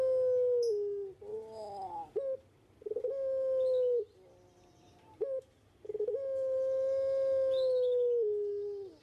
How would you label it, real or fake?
real